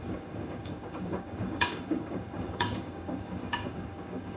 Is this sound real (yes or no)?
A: no